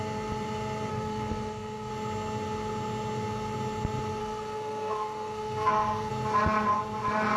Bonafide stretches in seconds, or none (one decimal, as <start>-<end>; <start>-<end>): 0.0-0.9; 1.9-4.2; 6.1-7.4